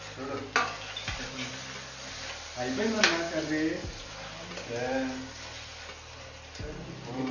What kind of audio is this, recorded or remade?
recorded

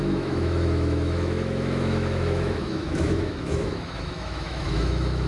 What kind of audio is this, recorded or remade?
remade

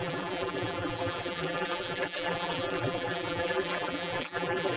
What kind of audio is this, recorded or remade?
remade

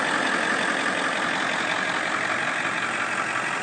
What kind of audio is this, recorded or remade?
recorded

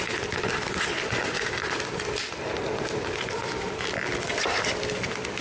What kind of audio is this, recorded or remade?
recorded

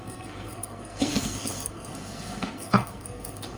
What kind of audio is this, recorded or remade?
remade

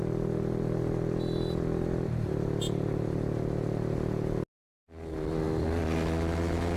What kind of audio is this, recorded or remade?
recorded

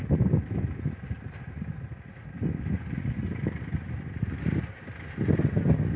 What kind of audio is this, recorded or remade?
recorded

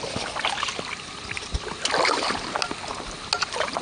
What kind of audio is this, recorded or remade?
recorded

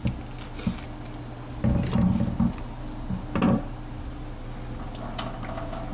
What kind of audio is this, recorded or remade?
recorded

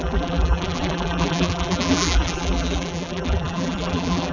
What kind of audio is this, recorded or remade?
remade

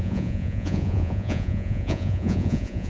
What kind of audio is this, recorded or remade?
remade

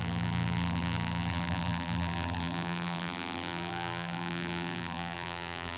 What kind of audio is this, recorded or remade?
remade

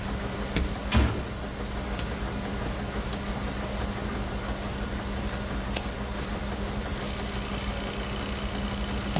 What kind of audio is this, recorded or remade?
recorded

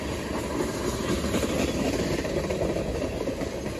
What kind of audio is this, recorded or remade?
recorded